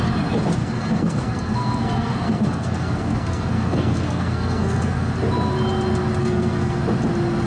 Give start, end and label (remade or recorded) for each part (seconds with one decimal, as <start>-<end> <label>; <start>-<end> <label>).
0.0-0.6 recorded; 0.6-5.1 remade; 5.1-6.2 recorded; 6.2-6.8 remade; 6.8-7.5 recorded